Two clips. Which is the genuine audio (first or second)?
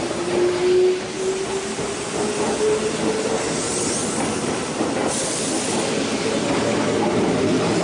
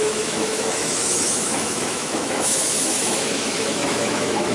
first